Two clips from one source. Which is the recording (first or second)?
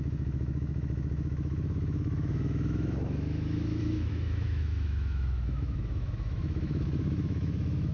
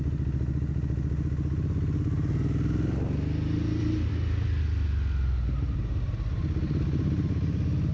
second